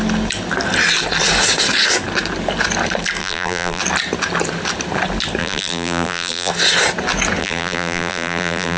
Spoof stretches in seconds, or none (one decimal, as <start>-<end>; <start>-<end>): 3.2-3.8; 5.4-6.5; 7.4-8.8